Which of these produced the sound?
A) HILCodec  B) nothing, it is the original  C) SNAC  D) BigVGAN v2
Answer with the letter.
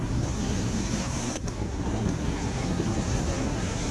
C